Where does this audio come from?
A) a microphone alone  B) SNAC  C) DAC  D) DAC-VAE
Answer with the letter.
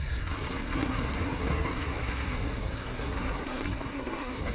B